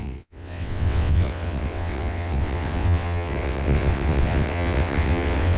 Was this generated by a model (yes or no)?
yes